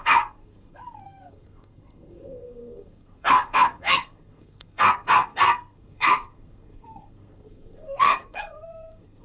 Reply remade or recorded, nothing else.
remade